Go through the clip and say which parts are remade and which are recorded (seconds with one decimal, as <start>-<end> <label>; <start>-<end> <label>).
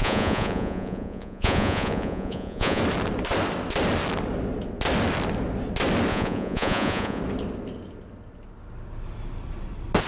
0.0-2.8 remade; 2.8-6.1 recorded; 6.1-7.2 remade; 7.2-10.1 recorded